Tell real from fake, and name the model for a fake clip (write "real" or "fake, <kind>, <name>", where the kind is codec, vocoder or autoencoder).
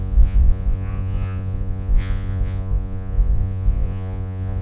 fake, vocoder, Vocos